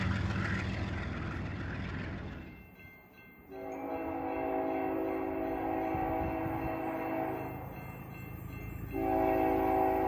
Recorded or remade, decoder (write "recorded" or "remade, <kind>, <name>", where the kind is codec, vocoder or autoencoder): recorded